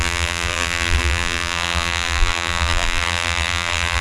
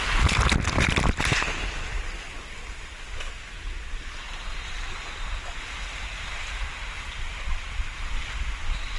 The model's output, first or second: first